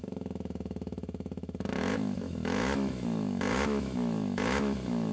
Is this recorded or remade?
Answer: remade